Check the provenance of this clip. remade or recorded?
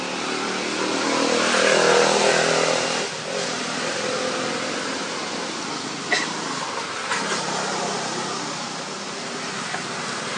recorded